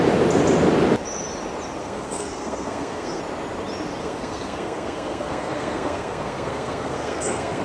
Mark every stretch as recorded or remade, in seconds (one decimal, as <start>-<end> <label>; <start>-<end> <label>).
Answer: 0.0-1.8 recorded; 1.8-3.2 remade; 3.2-4.0 recorded; 4.0-7.6 remade

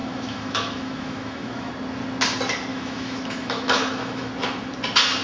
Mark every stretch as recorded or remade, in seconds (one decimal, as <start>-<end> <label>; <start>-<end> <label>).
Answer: 0.0-1.7 remade; 1.7-2.7 recorded; 2.7-4.3 remade; 4.3-5.2 recorded

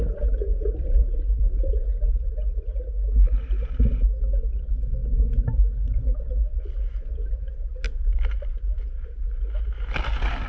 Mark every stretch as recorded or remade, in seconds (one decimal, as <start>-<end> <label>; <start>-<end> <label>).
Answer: 0.0-10.5 recorded